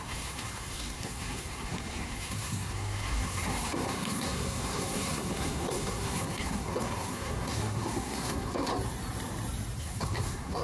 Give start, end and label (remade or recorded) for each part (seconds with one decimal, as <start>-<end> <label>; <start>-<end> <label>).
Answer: 0.0-8.7 remade; 8.7-9.8 recorded; 9.8-10.6 remade